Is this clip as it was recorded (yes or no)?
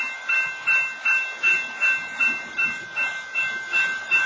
yes